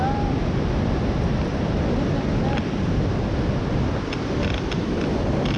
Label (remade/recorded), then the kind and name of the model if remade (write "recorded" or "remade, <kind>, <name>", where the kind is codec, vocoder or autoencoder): recorded